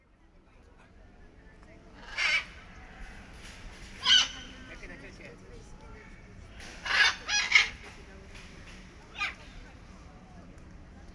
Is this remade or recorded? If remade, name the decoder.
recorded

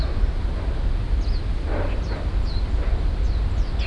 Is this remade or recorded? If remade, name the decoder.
recorded